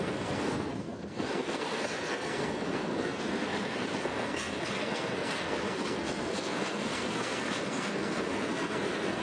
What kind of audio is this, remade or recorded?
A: remade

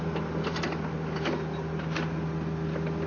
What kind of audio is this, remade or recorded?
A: recorded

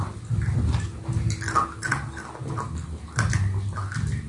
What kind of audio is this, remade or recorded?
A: recorded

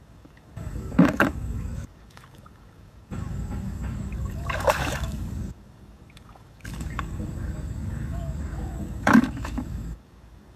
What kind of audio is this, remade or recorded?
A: remade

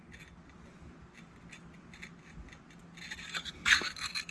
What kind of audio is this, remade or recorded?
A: recorded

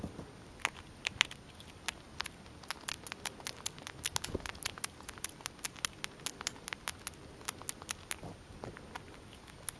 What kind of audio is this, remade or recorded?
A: recorded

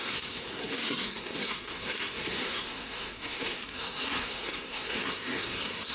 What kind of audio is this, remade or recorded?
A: remade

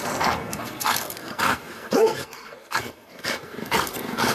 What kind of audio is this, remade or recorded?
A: remade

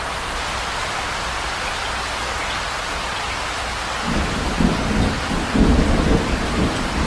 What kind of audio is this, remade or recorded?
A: recorded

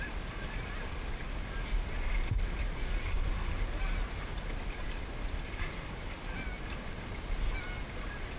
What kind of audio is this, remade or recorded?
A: recorded